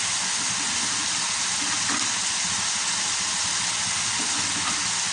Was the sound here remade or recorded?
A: recorded